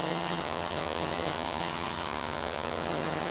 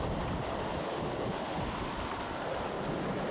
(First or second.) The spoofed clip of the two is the first